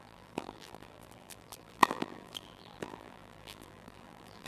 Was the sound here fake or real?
fake